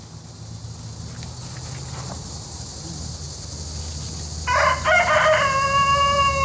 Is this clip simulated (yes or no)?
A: no